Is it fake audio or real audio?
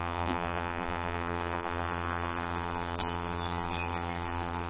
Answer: fake